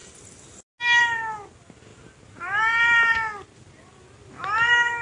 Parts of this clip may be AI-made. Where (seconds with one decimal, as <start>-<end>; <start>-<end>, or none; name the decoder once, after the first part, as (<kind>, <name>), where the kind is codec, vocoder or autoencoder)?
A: none

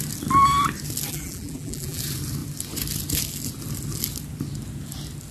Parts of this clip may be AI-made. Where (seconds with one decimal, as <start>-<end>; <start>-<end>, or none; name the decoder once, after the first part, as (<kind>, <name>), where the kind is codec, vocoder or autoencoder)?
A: 1.1-2.0 (vocoder, BigVGAN v2)

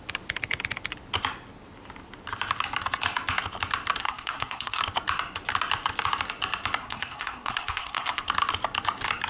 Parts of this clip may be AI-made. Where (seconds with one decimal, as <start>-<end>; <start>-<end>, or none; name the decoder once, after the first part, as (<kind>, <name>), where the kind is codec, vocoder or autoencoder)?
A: 4.0-4.8 (codec, SNAC); 6.8-8.3

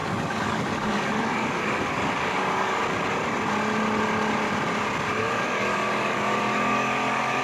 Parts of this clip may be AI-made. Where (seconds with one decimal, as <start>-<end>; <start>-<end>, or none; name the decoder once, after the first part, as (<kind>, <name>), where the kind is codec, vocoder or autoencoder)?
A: 0.0-2.8 (codec, DAC); 5.2-7.4